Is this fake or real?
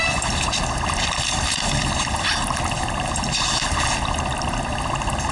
real